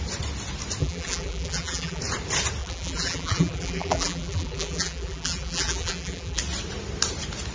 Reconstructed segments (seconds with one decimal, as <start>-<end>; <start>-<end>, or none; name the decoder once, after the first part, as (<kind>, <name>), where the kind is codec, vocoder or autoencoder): 0.8-2.0 (vocoder, BigVGAN v2); 2.6-6.4